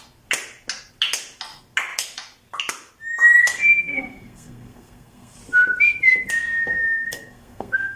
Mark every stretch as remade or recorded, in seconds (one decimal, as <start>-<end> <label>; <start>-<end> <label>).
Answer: 0.0-3.4 recorded; 3.4-5.4 remade; 5.4-6.7 recorded; 6.7-8.0 remade